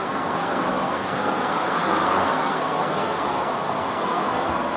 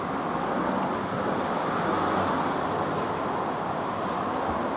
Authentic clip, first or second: second